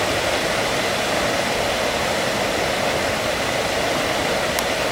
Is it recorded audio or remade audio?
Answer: remade